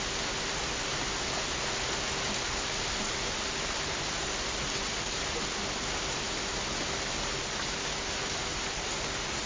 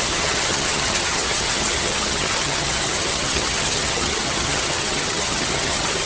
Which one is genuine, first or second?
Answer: first